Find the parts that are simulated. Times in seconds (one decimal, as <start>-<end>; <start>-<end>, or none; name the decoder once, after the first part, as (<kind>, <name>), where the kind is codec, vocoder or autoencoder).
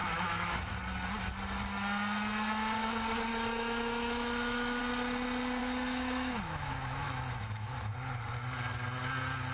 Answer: 0.0-0.8 (autoencoder, DAC-VAE); 3.3-4.8; 5.6-7.9